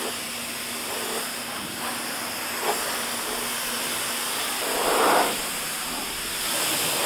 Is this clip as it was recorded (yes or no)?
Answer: yes